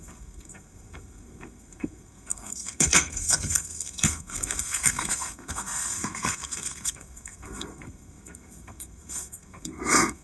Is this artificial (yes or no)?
yes